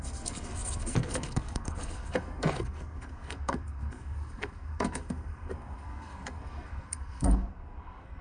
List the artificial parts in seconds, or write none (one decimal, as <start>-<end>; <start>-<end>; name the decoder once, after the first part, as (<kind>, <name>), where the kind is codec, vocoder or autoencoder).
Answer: 0.0-8.2 (codec, SNAC)